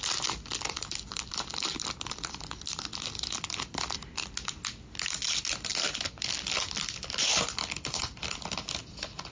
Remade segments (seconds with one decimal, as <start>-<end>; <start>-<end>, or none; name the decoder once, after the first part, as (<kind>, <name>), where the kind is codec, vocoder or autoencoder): 0.5-3.7 (vocoder, BigVGAN v2); 5.7-8.8